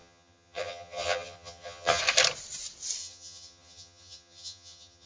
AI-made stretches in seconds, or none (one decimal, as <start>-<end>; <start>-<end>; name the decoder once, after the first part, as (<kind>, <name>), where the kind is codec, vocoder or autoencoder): 0.0-2.0 (vocoder, HiFi-GAN); 3.0-5.1